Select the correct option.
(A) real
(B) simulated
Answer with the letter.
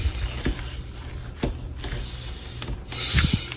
A